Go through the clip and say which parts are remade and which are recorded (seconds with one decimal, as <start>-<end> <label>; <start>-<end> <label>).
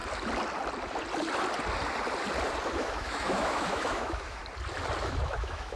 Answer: 0.0-2.7 recorded; 2.7-4.4 remade; 4.4-5.0 recorded; 5.0-5.8 remade